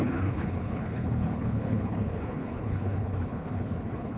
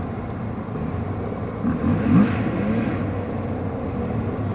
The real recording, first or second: second